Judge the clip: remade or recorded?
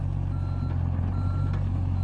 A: recorded